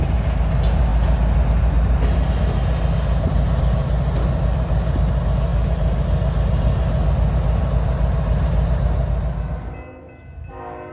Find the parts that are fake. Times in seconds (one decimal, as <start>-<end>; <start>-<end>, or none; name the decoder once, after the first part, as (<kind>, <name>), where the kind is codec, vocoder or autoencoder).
none